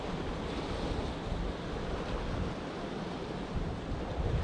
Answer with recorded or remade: recorded